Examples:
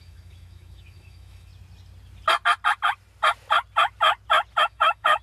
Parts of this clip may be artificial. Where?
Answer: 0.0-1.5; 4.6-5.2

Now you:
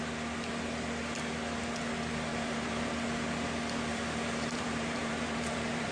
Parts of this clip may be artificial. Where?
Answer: 2.3-2.9; 3.9-5.9

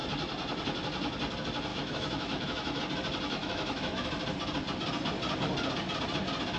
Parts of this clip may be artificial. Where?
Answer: 1.7-2.8; 3.4-4.1

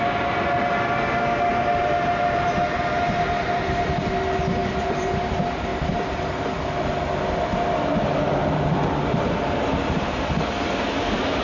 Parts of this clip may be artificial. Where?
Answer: 1.5-2.5; 4.6-5.3; 5.7-6.5; 8.4-10.4

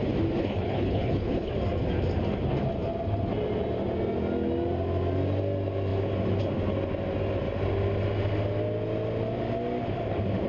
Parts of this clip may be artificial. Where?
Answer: 0.4-1.5

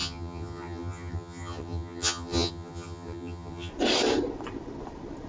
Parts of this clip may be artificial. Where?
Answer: 0.0-3.7